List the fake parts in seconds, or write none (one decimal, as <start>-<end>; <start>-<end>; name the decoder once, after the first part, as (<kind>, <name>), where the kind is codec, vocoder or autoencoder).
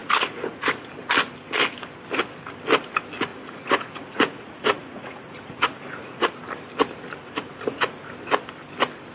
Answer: 0.0-0.9 (vocoder, Vocos); 3.3-6.3; 7.2-8.1